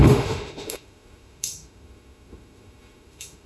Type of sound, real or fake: fake